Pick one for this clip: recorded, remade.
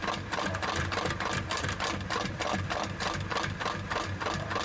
recorded